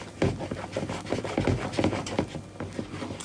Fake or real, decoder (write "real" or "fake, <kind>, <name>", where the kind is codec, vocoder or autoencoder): real